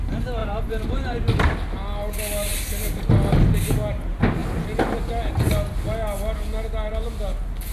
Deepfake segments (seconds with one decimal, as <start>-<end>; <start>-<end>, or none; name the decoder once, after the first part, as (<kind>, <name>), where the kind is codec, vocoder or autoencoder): 0.4-1.4 (vocoder, BigVGAN v2)